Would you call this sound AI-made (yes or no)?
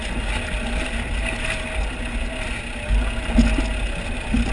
no